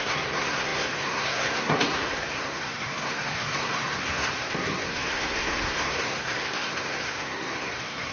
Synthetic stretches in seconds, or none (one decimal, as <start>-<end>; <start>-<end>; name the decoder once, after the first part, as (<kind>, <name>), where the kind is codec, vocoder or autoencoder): 0.0-8.1 (codec, SNAC)